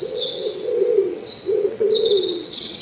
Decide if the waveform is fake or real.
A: fake